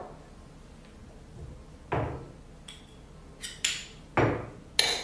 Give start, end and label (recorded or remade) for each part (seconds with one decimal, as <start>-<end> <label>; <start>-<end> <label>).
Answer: 0.0-5.0 recorded